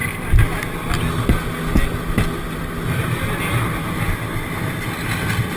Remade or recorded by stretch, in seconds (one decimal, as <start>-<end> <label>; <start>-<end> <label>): 0.0-5.6 recorded